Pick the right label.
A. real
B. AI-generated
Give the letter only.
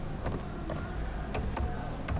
A